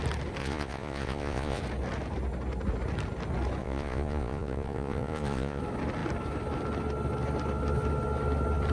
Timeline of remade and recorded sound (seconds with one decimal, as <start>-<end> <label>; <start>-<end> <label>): 0.0-0.4 recorded; 0.4-1.6 remade; 1.6-3.6 recorded; 3.6-5.6 remade; 5.6-8.7 recorded